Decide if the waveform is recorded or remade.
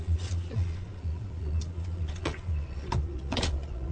remade